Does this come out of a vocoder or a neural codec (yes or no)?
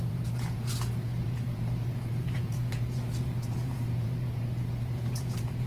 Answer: yes